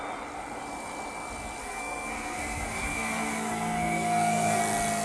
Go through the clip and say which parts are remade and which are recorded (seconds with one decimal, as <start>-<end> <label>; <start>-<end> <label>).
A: 0.0-1.6 recorded; 1.6-4.6 remade; 4.6-5.0 recorded